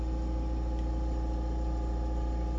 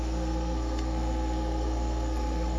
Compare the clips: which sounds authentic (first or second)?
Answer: first